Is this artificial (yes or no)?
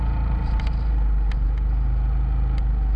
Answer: no